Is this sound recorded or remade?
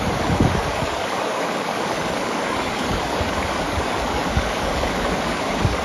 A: remade